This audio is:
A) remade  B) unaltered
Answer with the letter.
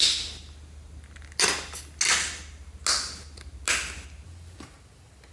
B